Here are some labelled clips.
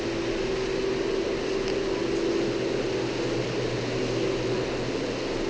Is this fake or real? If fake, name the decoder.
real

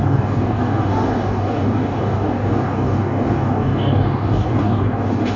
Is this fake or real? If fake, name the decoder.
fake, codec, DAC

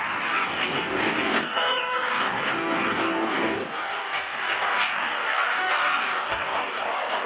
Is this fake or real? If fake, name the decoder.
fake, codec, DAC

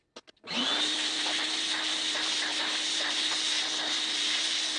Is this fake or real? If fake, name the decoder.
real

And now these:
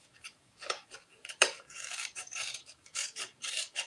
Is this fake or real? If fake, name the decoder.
fake, codec, DAC